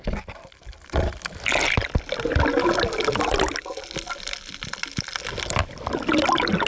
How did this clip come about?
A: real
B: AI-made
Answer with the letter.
A